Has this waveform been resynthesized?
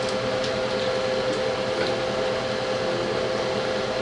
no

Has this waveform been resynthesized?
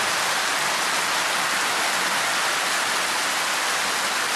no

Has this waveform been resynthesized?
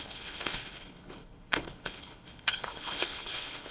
yes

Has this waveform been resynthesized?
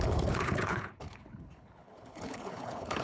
yes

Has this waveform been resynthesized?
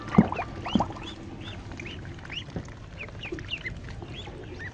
no